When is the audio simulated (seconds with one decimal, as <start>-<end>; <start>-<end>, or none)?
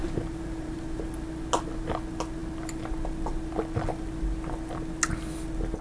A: 0.0-0.8